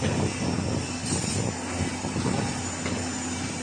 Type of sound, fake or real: real